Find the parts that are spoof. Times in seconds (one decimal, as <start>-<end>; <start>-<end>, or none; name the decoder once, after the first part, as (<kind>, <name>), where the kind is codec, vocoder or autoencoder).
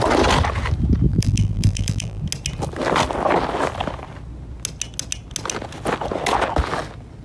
1.1-2.2 (vocoder, BigVGAN v2)